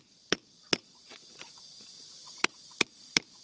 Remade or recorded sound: remade